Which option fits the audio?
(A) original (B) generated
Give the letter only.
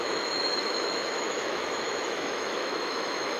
B